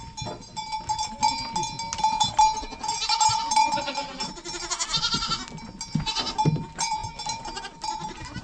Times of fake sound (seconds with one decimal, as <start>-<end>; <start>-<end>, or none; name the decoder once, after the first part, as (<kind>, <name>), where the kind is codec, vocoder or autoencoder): none